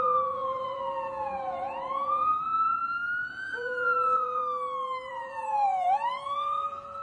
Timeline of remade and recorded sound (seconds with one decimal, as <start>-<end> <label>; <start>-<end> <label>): 0.0-2.8 remade; 2.8-3.3 recorded; 3.3-4.4 remade; 4.4-5.1 recorded; 5.1-7.0 remade